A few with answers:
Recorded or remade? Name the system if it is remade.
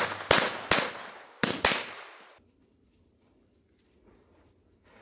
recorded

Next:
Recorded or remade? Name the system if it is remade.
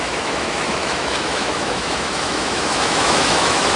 remade, autoencoder, DAC-VAE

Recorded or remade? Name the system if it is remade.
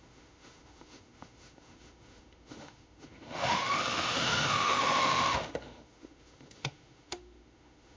remade, autoencoder, DAC-VAE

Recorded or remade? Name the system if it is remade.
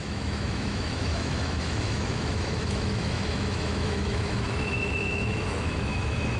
remade, autoencoder, DAC-VAE